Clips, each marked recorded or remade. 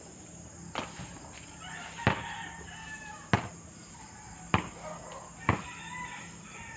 recorded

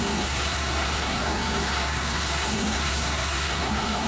remade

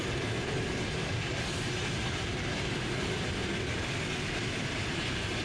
recorded